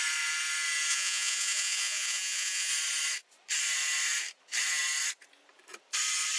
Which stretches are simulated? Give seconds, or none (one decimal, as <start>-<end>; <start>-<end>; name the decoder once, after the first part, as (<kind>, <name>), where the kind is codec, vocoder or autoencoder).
0.9-2.7 (vocoder, Vocos)